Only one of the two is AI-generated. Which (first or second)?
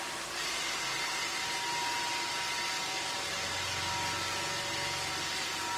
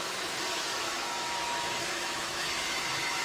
second